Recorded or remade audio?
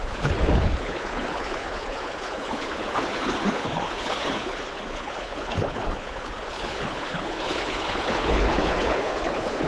remade